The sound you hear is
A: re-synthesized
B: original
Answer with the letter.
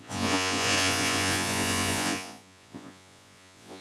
A